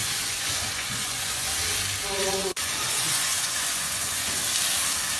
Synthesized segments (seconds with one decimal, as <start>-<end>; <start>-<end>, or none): 0.0-1.5; 2.2-4.4